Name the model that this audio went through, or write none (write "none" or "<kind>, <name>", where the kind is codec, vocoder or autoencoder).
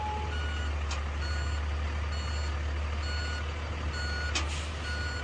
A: none